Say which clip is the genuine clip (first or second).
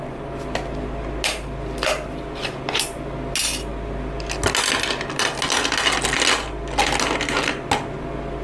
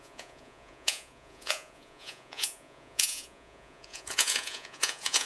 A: first